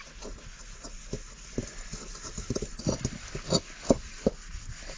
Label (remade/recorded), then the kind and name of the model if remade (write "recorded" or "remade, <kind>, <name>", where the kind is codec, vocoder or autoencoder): recorded